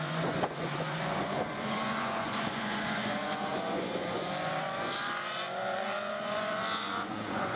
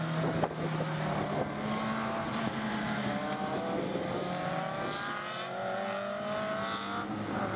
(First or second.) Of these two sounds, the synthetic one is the first